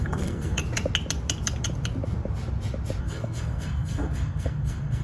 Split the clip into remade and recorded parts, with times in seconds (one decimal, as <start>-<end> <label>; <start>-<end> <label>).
0.0-0.6 remade; 0.6-3.0 recorded; 3.0-5.0 remade